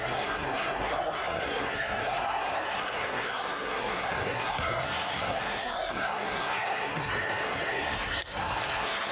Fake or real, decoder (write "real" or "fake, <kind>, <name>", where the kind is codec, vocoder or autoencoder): fake, codec, SNAC